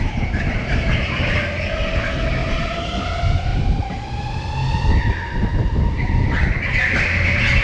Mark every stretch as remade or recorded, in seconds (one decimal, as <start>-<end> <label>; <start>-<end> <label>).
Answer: 0.0-3.5 recorded; 3.5-4.5 remade; 4.5-5.5 recorded; 5.5-6.3 remade; 6.3-7.6 recorded